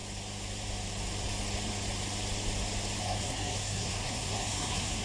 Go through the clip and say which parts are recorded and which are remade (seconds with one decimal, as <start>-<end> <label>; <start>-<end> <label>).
0.0-3.0 recorded; 3.0-5.0 remade